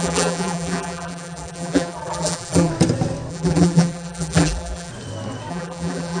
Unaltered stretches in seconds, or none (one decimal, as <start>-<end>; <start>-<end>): 2.7-3.3; 4.9-5.5